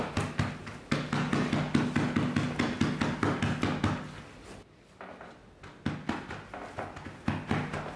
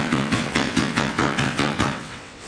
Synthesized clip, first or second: second